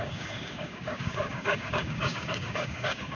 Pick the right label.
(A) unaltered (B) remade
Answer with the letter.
B